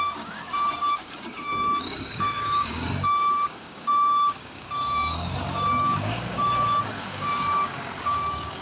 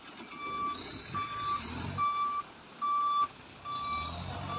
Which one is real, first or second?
second